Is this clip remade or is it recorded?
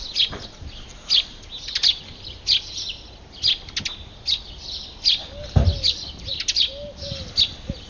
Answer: recorded